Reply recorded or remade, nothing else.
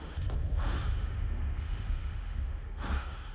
remade